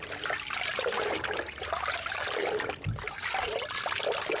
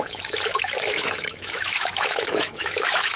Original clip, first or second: first